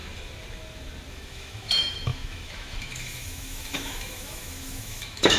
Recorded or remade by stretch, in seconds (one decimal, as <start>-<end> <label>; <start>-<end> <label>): 0.0-1.1 recorded; 1.1-5.4 remade